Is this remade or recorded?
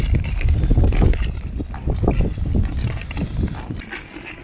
recorded